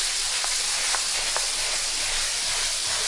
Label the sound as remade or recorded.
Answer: recorded